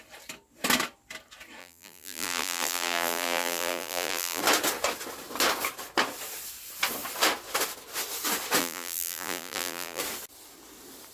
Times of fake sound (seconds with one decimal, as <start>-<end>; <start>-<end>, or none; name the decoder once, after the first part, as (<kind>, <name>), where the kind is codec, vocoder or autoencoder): 1.6-4.4 (vocoder, BigVGAN v2); 8.6-10.0